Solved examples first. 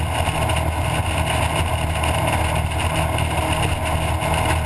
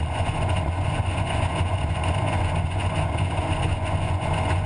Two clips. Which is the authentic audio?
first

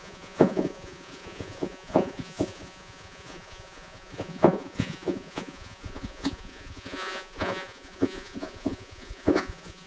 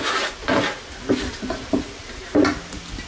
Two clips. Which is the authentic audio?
second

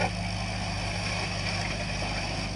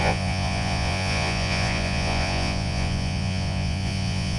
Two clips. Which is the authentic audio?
first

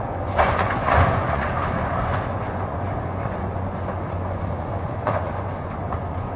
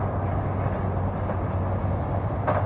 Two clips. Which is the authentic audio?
second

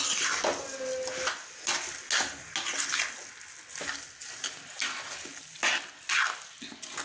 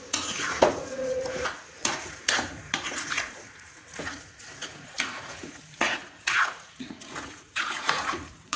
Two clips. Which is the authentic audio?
first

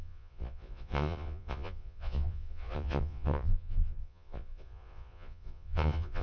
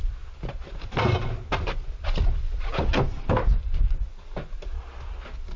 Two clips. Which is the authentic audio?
second